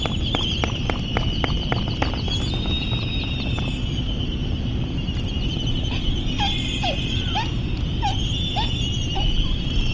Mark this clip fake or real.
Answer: real